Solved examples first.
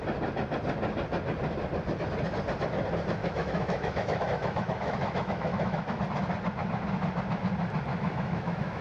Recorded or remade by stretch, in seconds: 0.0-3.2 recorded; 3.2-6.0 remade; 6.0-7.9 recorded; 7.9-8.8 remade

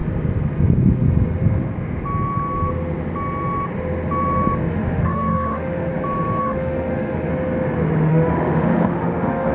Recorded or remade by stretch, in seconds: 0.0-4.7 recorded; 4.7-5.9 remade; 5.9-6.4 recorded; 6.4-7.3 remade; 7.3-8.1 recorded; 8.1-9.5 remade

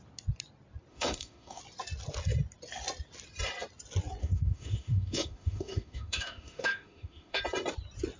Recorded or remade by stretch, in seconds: 0.0-0.9 recorded; 0.9-1.6 remade; 1.6-4.2 recorded; 4.2-7.4 remade; 7.4-8.2 recorded

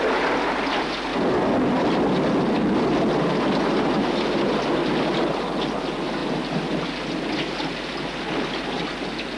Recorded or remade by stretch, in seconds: 0.0-9.4 recorded

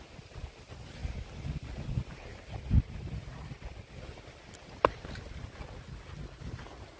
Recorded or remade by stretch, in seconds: 0.0-7.0 recorded

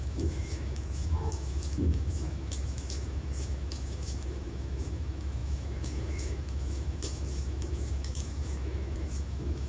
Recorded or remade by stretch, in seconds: 0.0-9.7 remade

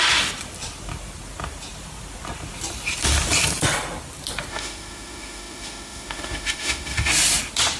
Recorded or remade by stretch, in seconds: 0.0-4.5 recorded; 4.5-7.1 remade; 7.1-7.8 recorded